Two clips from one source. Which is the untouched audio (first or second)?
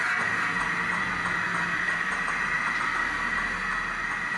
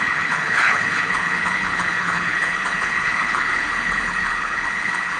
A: first